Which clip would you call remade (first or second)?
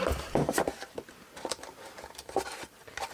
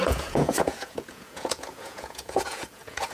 second